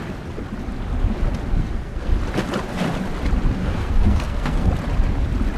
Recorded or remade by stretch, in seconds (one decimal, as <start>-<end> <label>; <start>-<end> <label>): 0.0-1.5 recorded; 1.5-2.1 remade; 2.1-3.6 recorded; 3.6-4.7 remade; 4.7-5.6 recorded